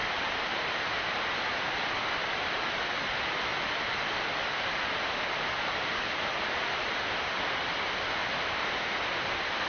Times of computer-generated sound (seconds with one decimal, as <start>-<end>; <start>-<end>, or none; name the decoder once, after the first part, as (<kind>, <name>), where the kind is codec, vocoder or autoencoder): 0.0-2.6 (vocoder, BigVGAN v2); 8.2-8.8

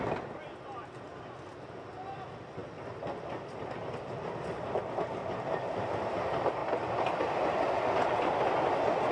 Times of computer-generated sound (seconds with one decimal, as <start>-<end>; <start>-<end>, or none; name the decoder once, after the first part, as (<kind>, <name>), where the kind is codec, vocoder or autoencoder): none